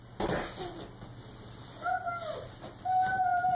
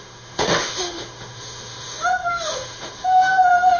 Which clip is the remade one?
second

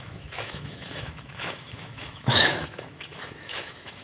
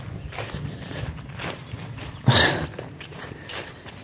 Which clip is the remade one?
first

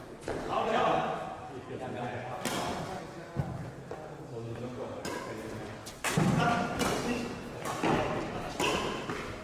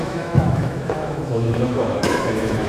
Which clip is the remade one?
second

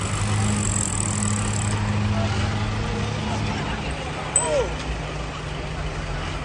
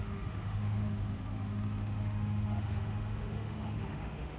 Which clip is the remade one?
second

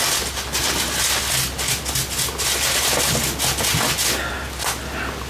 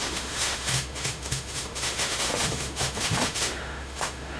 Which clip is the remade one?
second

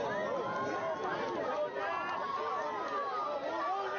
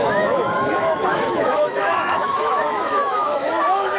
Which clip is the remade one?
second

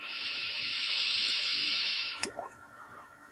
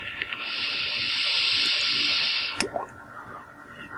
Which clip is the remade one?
first